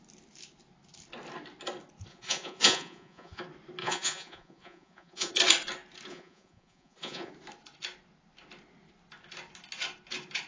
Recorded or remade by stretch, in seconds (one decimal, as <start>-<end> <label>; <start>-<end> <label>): 0.0-2.1 recorded; 2.1-3.4 remade; 3.4-3.8 recorded; 3.8-5.3 remade; 5.3-6.1 recorded; 6.1-7.3 remade; 7.3-10.5 recorded